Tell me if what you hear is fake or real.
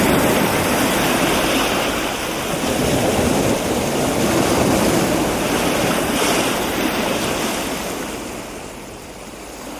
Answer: real